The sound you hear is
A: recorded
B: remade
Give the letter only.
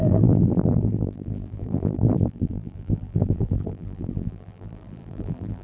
B